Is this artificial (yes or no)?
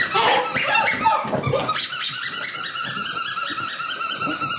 no